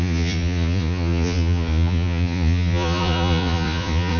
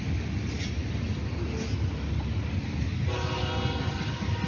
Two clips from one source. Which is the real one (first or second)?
second